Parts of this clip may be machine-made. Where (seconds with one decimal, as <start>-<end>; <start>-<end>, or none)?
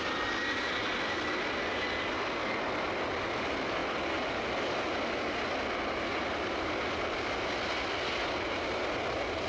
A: none